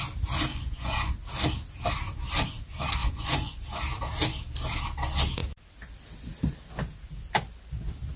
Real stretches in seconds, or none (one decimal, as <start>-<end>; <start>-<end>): 0.0-0.5; 1.1-3.0; 3.6-8.2